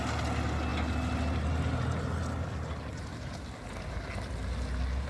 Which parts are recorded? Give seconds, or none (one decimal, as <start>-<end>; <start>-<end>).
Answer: 0.0-5.1